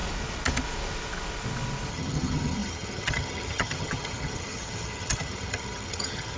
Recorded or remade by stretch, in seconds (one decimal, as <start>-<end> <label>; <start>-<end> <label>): 0.0-1.9 recorded; 1.9-6.4 remade